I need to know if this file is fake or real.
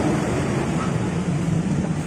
fake